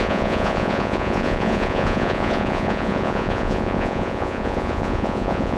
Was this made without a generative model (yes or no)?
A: no